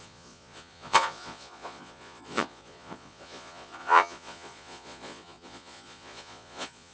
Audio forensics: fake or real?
fake